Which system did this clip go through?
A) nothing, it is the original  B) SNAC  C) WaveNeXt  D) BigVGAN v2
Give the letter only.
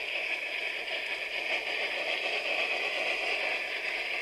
D